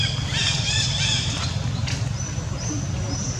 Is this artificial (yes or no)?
no